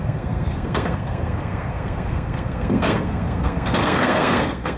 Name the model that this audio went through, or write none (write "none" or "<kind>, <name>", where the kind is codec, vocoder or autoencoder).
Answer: codec, SNAC